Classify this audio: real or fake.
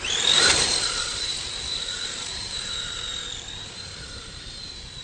fake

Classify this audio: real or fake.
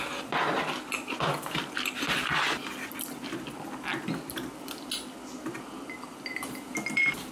real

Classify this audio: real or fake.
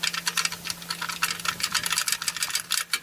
real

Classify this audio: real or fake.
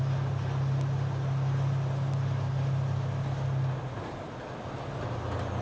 real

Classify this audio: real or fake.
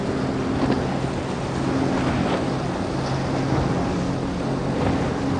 real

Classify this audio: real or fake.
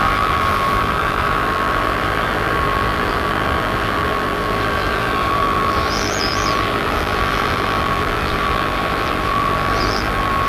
fake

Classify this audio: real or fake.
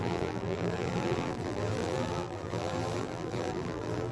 fake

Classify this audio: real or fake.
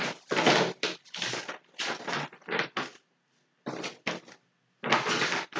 real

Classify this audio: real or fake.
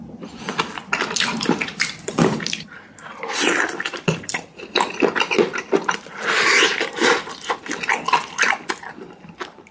fake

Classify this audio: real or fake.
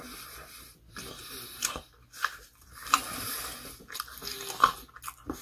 real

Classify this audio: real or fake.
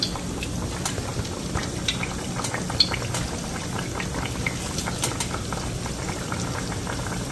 fake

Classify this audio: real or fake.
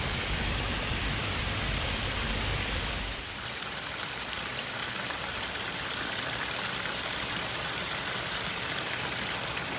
fake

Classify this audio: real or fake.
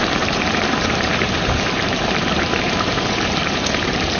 fake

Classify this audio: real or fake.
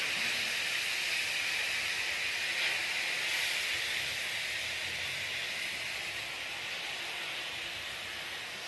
real